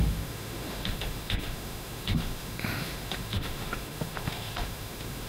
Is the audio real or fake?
fake